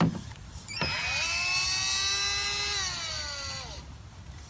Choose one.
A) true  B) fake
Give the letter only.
A